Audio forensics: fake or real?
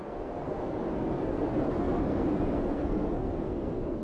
fake